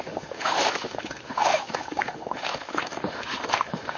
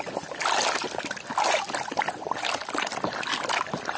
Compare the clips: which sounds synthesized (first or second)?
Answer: first